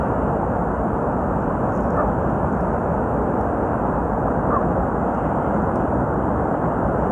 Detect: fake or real real